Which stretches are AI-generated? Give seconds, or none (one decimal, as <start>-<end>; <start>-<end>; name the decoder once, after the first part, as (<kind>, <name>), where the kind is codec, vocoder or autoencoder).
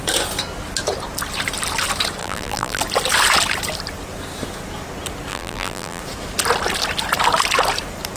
2.2-2.8 (vocoder, BigVGAN v2); 5.3-6.0